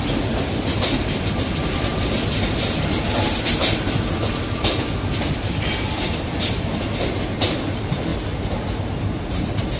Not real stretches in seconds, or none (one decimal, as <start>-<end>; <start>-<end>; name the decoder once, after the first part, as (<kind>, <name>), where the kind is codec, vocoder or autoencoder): none